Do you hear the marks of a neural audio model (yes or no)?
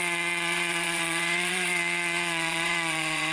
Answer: yes